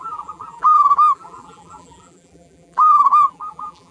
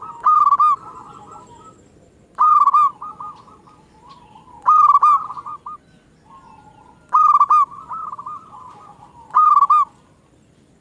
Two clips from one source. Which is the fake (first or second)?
first